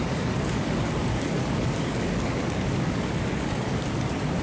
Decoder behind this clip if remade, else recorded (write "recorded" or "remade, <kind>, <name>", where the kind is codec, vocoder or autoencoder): remade, codec, DAC